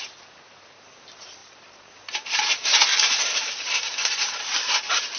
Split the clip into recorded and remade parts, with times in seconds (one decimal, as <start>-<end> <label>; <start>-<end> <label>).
0.0-5.2 remade